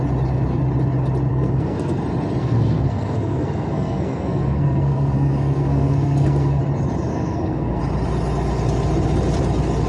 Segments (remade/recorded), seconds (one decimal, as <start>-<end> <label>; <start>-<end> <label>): 0.0-1.3 recorded; 1.3-2.0 remade; 2.0-2.4 recorded; 2.4-6.6 remade; 6.6-7.1 recorded; 7.1-7.8 remade; 7.8-9.9 recorded